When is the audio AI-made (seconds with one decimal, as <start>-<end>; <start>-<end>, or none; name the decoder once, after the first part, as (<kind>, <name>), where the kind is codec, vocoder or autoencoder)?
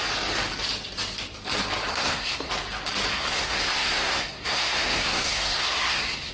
1.9-2.5 (codec, SNAC); 3.1-6.3